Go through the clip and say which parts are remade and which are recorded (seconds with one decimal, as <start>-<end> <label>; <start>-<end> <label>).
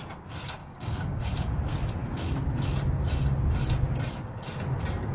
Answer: 0.0-0.6 recorded; 0.6-1.2 remade; 1.2-5.1 recorded